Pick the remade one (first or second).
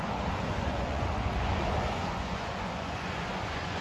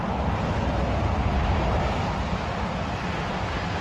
first